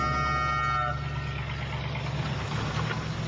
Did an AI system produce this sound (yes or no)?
no